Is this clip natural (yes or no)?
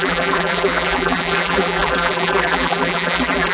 no